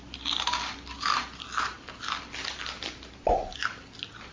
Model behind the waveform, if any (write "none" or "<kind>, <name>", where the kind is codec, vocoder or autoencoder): none